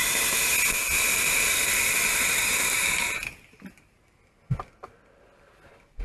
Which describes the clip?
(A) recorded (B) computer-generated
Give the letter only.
A